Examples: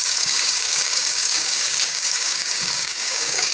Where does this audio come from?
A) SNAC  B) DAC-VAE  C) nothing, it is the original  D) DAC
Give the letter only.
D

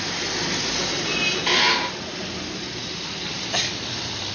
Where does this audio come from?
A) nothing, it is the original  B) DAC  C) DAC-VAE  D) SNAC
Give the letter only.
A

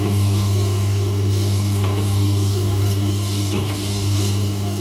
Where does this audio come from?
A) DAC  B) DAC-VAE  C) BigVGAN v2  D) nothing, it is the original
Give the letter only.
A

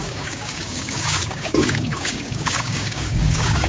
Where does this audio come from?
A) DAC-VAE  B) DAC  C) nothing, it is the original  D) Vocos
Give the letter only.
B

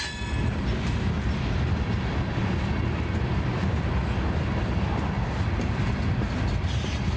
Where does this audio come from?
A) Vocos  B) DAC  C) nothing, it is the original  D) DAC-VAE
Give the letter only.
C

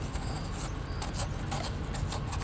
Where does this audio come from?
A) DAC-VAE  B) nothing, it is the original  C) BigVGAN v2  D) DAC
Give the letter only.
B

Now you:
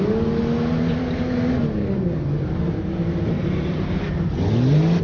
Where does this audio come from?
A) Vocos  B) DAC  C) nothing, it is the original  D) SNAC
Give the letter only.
C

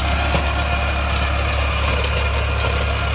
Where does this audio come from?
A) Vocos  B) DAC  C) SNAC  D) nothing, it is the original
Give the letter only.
D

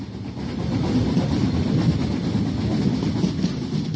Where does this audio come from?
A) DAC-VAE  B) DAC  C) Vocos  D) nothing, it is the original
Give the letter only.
D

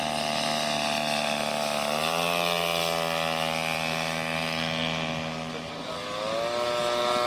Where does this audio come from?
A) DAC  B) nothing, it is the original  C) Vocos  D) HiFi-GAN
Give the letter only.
B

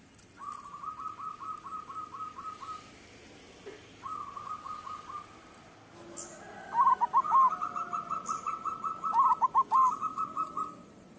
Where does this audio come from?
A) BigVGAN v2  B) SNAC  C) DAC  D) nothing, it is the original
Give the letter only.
D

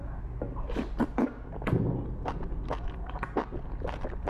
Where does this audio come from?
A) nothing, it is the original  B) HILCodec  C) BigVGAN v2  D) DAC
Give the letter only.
A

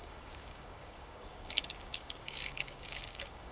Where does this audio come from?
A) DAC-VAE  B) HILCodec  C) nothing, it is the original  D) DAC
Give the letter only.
D